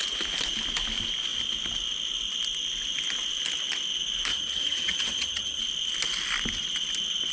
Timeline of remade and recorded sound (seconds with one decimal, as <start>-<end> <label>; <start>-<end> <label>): 0.0-4.3 recorded; 4.3-5.6 remade; 5.6-7.3 recorded